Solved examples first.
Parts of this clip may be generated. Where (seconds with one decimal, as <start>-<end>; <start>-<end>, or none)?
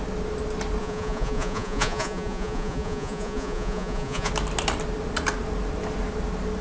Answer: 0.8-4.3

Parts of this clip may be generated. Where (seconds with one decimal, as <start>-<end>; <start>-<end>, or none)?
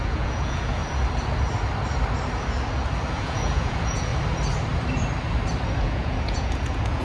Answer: 0.0-0.8; 3.1-4.1; 5.8-7.0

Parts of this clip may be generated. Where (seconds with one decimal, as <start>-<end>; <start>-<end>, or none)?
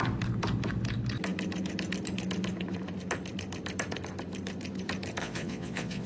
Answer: 5.2-6.1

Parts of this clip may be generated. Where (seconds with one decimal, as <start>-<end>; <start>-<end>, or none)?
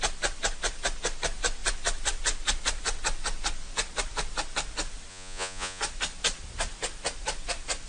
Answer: 5.1-5.8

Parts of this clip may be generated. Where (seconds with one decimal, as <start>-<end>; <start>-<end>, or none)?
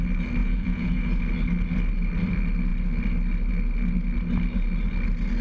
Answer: 0.4-1.2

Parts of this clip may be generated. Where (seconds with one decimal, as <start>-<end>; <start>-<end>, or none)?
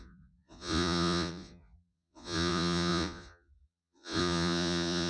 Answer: 0.0-5.1